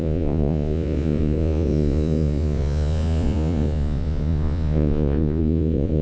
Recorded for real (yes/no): no